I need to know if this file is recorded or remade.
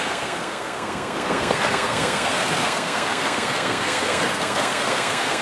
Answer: remade